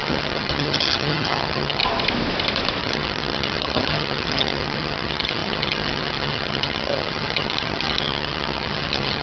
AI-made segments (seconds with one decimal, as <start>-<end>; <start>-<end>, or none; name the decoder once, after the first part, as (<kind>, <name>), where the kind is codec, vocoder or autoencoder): 0.0-1.8 (vocoder, HiFi-GAN); 2.8-9.2